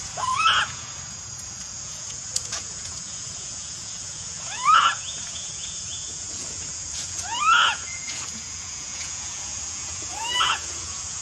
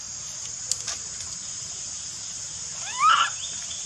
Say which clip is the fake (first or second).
first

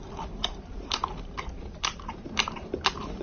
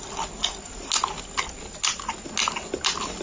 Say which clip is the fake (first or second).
first